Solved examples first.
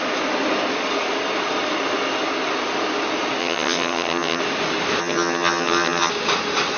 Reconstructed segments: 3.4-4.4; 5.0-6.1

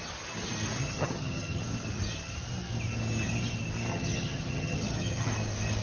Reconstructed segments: 0.8-1.6; 3.9-5.3